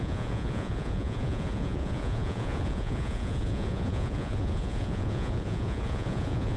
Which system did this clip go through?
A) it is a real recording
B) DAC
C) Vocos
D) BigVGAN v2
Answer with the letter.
C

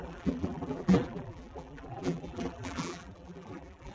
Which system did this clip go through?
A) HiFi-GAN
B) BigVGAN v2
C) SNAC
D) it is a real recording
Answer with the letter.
B